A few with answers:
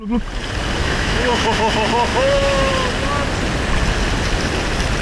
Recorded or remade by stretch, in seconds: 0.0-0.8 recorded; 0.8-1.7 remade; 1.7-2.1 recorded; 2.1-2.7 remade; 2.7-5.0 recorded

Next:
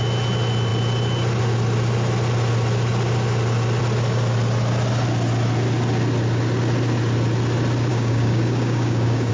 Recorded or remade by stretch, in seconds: 0.0-7.9 recorded; 7.9-9.3 remade

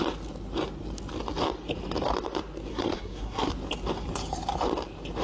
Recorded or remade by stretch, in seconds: 0.0-2.7 recorded; 2.7-3.5 remade; 3.5-5.2 recorded

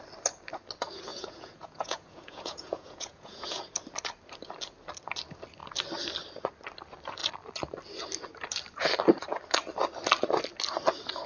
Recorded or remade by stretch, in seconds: 0.0-1.1 recorded; 1.1-3.6 remade; 3.6-11.3 recorded